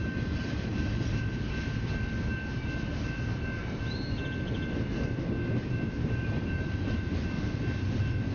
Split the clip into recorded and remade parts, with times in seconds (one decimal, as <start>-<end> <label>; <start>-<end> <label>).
0.0-8.3 recorded